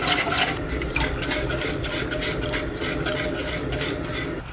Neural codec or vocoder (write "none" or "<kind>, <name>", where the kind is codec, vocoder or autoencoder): none